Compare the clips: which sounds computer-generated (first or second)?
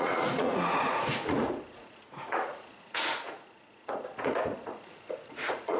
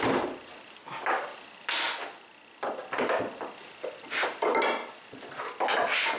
first